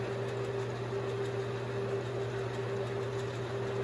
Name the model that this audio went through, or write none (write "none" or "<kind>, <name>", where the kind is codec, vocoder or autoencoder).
none